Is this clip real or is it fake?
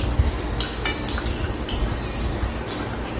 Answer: real